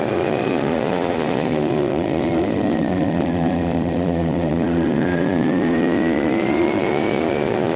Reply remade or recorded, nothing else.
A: remade